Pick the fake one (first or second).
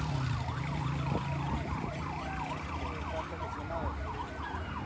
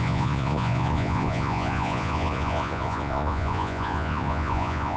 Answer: second